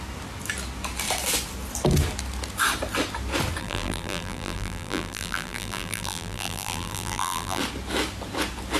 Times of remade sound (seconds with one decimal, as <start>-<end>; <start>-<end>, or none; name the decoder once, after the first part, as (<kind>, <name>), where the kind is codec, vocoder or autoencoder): 3.6-7.6 (vocoder, BigVGAN v2)